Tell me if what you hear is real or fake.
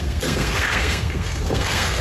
fake